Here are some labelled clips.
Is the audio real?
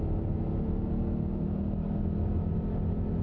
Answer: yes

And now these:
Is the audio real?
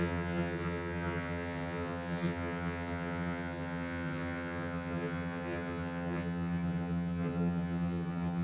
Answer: no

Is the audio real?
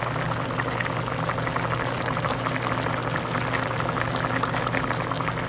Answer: yes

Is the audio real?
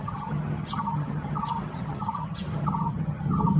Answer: no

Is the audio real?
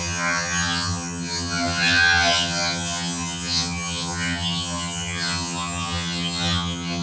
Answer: no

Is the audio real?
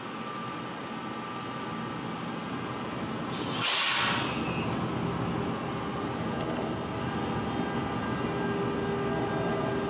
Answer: yes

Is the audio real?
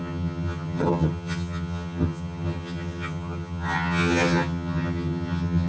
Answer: no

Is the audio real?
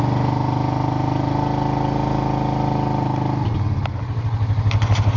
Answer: yes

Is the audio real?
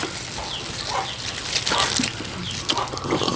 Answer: yes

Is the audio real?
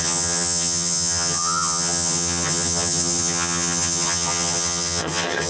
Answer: no